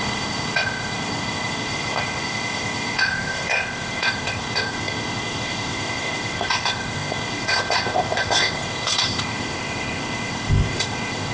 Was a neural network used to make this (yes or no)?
yes